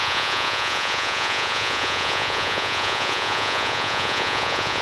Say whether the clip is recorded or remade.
remade